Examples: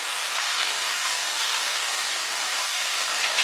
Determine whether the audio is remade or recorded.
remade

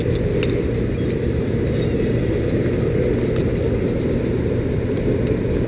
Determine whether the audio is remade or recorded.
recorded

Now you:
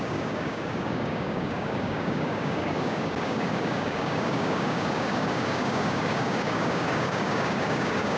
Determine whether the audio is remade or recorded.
remade